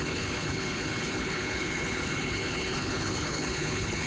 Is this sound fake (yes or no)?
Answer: yes